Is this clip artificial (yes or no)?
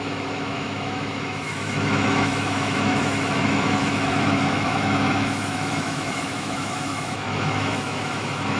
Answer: yes